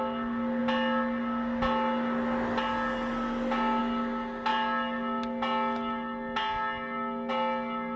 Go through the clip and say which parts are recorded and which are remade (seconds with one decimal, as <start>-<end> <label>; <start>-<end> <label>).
0.0-8.0 recorded